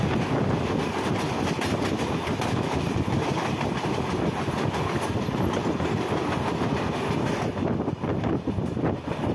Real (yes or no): yes